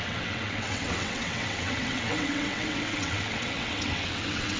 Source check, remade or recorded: remade